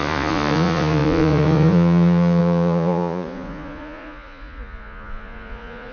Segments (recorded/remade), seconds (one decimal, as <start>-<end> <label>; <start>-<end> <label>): 0.0-5.9 remade